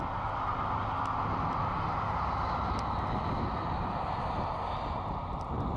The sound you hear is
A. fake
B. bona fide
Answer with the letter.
B